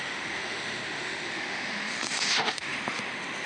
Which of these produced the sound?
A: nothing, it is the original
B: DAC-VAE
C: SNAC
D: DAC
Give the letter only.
B